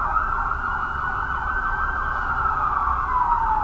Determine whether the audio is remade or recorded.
recorded